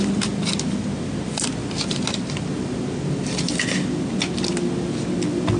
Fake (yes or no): no